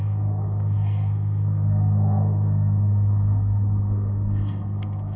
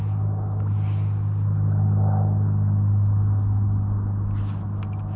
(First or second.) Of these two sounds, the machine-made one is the first